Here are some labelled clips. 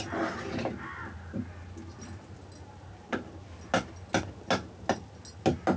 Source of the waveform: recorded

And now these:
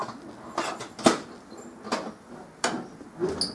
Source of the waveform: recorded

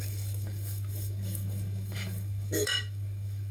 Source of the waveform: remade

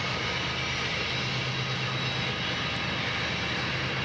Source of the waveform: recorded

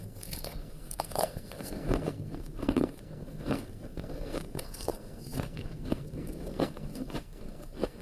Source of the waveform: remade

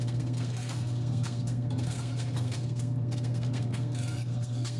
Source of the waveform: remade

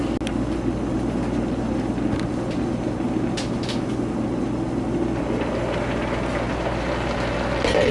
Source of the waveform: recorded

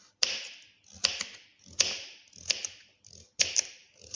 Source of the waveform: recorded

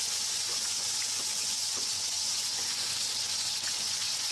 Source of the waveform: remade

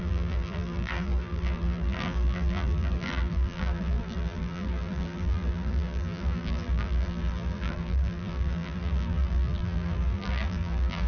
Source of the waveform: remade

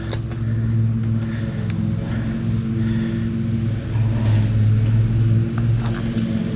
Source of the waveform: recorded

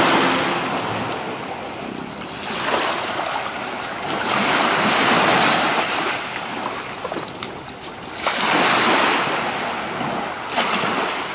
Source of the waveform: recorded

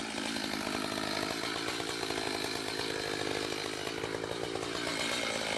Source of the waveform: recorded